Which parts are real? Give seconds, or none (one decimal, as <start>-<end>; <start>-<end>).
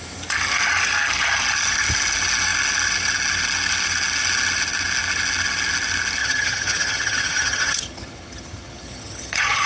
0.0-6.2